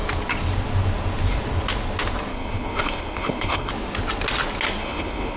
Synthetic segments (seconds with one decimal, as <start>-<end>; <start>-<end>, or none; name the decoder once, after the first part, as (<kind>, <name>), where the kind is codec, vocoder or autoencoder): 2.3-3.7 (codec, HILCodec); 4.8-5.4